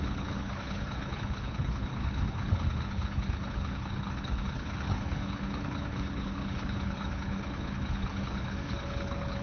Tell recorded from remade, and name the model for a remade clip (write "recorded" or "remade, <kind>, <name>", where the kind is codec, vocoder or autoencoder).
remade, codec, HILCodec